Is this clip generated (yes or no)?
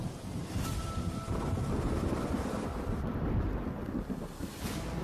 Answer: no